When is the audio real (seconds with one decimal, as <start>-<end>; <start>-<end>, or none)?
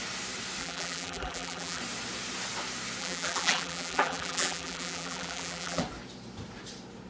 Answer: 0.0-0.6; 1.8-3.0; 5.8-7.1